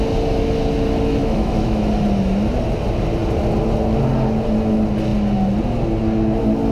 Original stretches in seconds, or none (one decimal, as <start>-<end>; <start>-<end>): 0.0-1.2; 1.9-6.7